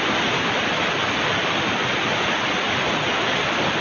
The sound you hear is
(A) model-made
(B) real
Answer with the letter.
B